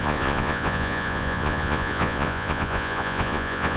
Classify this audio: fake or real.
fake